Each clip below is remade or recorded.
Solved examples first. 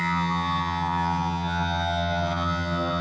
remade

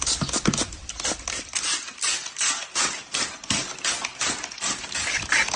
recorded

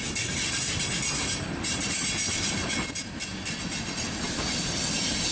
recorded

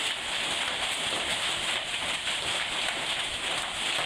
recorded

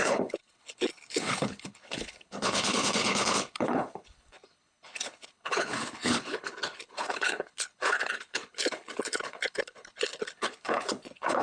remade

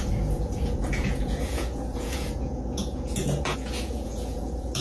remade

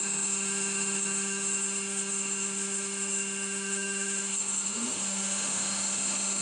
remade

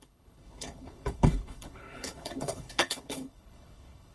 remade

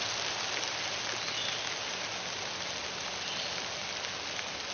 recorded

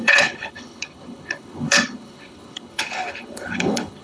remade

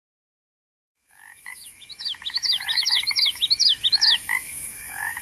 remade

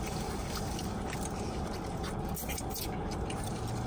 recorded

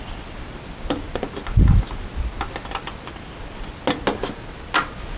recorded